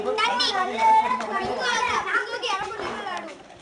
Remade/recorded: remade